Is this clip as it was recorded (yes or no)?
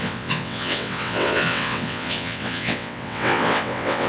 no